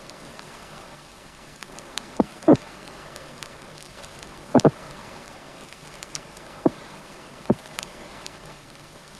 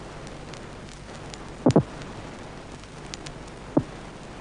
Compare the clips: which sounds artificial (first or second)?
first